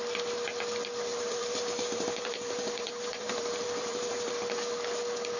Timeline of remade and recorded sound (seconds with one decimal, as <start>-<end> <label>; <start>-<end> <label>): 0.0-1.1 recorded; 1.1-4.3 remade; 4.3-5.4 recorded